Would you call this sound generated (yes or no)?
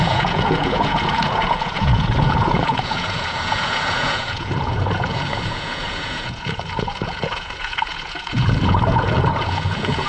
yes